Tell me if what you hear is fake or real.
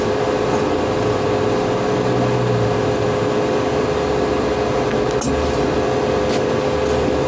real